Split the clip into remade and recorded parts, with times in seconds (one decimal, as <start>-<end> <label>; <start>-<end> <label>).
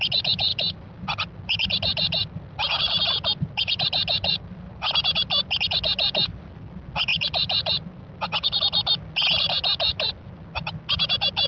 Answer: 0.0-0.5 recorded; 0.5-5.5 remade; 5.5-7.1 recorded; 7.1-8.6 remade; 8.6-11.5 recorded